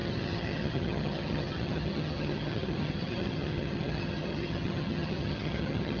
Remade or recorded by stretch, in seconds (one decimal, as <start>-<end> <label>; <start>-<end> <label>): 0.0-6.0 remade